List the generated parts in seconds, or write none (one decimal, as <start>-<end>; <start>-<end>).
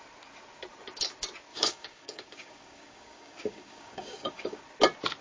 1.5-4.6